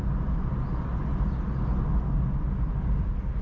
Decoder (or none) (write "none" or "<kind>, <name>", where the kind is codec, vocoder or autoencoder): none